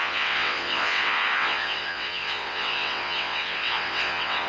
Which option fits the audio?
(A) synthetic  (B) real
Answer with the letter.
A